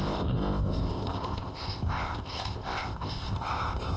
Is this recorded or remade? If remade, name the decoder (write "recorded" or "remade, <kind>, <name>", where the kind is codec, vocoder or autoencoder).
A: remade, codec, ZipCodec